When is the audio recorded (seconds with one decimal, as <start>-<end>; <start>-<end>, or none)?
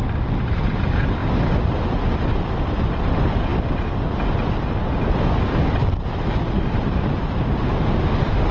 0.0-8.5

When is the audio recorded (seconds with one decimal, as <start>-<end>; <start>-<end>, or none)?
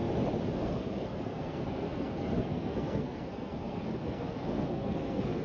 0.0-0.5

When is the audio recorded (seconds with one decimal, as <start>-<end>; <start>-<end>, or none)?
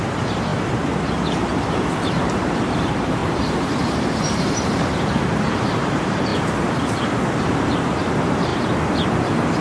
6.3-7.4; 8.5-9.6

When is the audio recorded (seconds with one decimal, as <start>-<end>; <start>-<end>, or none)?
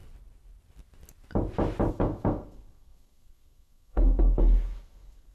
0.0-1.9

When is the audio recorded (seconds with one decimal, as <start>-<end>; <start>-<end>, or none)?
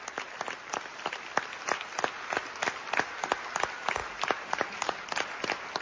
0.0-5.8